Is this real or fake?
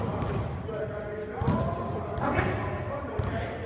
real